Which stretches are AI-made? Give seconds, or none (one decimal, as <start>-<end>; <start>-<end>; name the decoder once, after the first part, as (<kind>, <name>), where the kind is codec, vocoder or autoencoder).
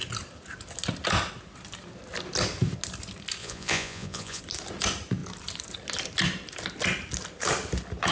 3.4-4.4 (vocoder, Vocos)